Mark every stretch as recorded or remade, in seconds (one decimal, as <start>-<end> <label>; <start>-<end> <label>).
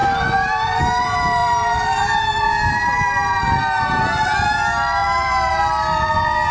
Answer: 0.0-0.8 remade; 0.8-1.4 recorded; 1.4-3.4 remade; 3.4-5.0 recorded; 5.0-5.5 remade; 5.5-6.5 recorded